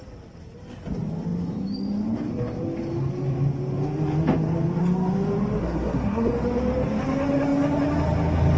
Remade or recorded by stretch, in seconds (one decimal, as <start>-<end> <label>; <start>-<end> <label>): 0.0-5.6 recorded; 5.6-6.3 remade; 6.3-8.6 recorded